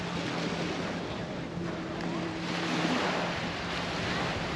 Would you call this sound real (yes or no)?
yes